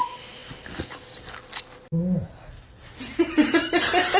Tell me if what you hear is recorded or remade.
recorded